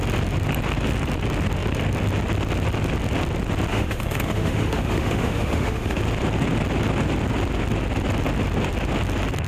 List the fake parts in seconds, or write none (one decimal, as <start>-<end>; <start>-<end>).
3.7-6.0